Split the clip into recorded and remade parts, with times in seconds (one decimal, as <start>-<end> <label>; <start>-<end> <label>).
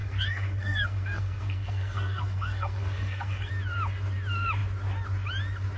0.0-3.5 remade; 3.5-5.8 recorded